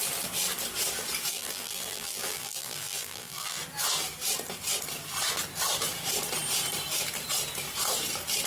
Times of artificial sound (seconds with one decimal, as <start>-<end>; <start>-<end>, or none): 1.3-3.6